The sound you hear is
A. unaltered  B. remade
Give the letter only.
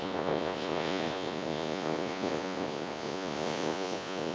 B